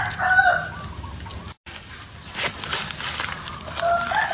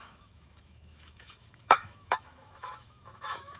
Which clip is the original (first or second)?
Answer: first